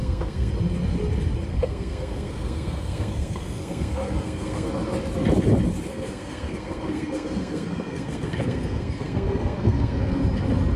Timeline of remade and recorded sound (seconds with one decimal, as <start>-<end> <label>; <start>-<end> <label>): 0.0-0.5 remade; 0.5-1.5 recorded; 1.5-4.7 remade; 4.7-5.9 recorded; 5.9-10.2 remade; 10.2-10.8 recorded